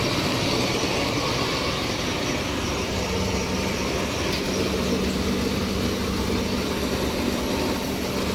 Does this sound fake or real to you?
real